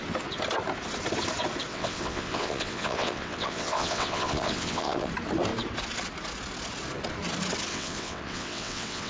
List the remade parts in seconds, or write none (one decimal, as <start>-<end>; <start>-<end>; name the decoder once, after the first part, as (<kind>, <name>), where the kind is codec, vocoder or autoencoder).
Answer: 1.7-5.1 (vocoder, WaveNeXt); 7.7-9.1